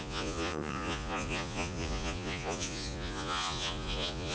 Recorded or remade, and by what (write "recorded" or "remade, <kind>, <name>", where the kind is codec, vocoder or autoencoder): remade, vocoder, Vocos